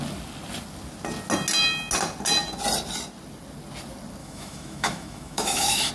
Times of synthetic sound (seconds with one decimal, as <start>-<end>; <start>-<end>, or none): 4.2-5.9